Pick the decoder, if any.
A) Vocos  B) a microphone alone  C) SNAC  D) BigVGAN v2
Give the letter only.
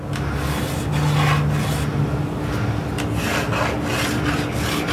B